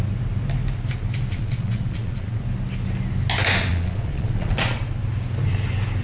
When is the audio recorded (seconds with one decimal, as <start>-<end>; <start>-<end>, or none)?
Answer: 0.0-1.3; 2.4-3.7; 4.8-6.0